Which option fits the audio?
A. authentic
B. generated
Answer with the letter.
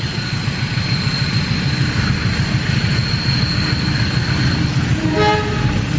A